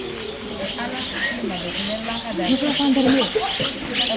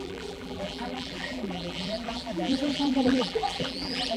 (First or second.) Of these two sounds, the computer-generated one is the second